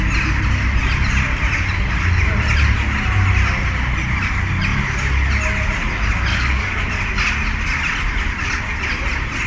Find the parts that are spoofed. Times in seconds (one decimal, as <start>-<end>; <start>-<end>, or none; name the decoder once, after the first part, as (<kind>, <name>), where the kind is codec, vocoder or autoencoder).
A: 6.3-7.0 (codec, DAC)